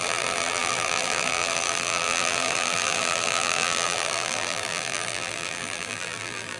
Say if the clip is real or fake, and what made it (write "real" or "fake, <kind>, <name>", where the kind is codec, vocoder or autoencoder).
fake, vocoder, BigVGAN v2